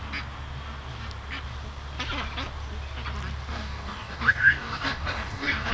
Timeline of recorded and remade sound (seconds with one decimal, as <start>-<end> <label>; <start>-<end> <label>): 0.0-3.5 recorded; 3.5-5.7 remade